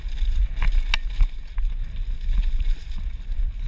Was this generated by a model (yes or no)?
no